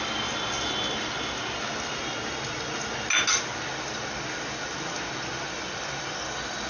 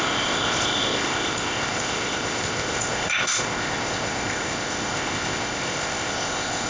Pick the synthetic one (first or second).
second